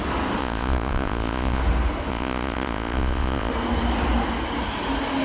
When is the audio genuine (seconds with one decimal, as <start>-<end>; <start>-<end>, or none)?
0.0-0.4; 1.6-2.1; 3.5-5.2